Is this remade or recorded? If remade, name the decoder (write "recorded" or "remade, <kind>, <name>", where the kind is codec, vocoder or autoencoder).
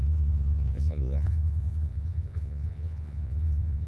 remade, vocoder, Vocos